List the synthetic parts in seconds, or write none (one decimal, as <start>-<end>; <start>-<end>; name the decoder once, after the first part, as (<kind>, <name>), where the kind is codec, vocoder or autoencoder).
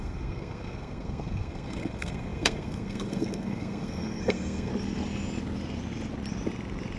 0.0-4.7 (codec, SNAC)